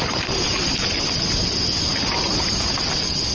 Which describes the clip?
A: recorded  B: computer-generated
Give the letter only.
A